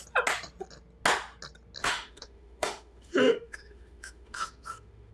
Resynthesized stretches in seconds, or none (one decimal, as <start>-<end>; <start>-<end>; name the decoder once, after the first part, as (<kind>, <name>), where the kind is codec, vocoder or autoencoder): 1.8-5.1 (autoencoder, DAC-VAE)